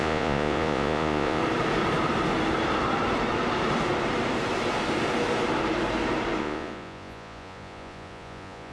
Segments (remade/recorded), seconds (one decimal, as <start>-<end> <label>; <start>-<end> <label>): 0.0-1.4 remade; 1.4-6.4 recorded; 6.4-8.7 remade